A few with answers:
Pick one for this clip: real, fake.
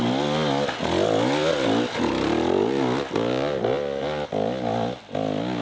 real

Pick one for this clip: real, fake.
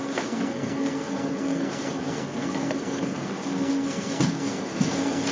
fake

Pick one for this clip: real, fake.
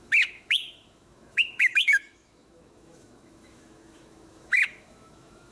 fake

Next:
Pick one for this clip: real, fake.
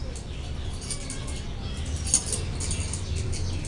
real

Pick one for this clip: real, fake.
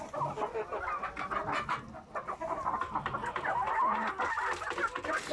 real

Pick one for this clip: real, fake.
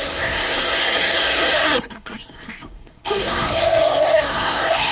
fake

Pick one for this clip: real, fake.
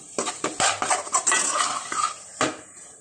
fake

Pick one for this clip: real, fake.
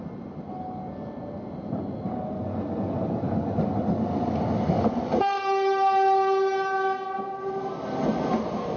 real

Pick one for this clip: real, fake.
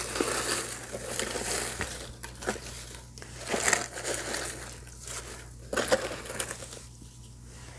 real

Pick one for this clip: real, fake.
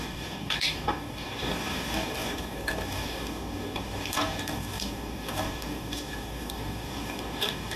fake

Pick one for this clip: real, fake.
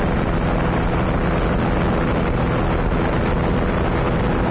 real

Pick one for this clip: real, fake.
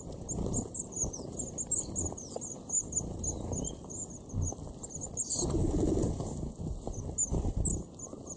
real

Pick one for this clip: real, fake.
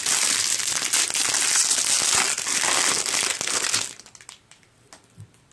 real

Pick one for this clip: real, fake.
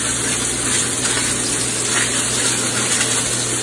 real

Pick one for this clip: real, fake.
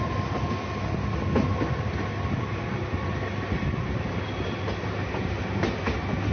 real